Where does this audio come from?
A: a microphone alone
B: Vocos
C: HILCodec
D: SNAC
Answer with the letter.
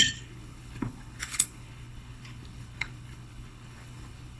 C